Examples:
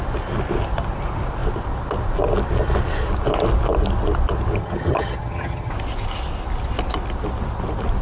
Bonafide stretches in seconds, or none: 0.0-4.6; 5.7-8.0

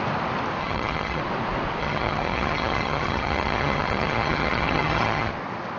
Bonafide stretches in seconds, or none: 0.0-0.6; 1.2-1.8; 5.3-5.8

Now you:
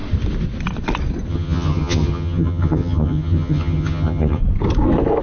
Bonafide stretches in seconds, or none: 0.0-1.3; 4.4-5.2

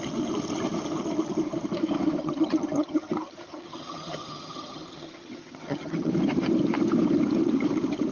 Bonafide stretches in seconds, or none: 0.0-2.2; 6.1-8.1

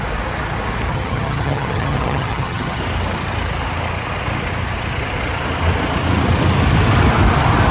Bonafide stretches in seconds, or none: 0.0-0.9; 2.8-7.7

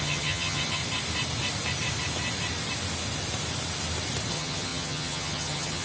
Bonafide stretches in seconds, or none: 0.8-4.3

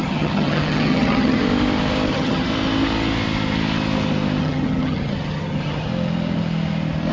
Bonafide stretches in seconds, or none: 1.4-2.1; 2.5-4.4; 5.9-7.1

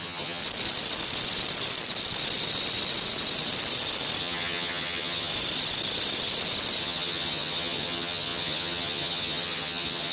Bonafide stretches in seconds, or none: 0.4-4.2; 5.3-6.8